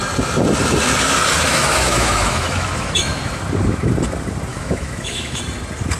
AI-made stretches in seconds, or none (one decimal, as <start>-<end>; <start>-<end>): 1.5-3.4; 4.5-5.4